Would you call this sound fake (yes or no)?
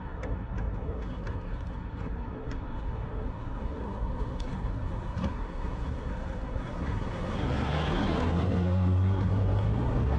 yes